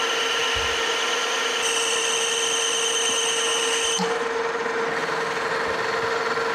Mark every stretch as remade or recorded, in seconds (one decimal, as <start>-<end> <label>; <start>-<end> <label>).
0.0-6.5 recorded